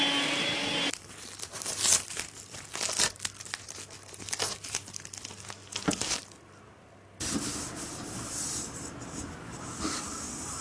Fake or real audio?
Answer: real